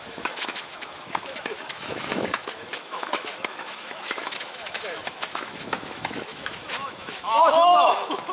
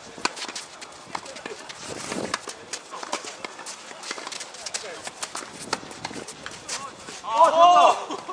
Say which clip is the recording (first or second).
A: second